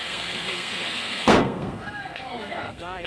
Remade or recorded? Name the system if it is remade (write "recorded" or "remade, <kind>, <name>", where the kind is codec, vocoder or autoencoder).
remade, codec, SNAC